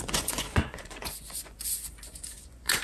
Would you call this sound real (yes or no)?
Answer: no